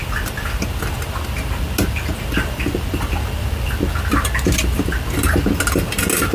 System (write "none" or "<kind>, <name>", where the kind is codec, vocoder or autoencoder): none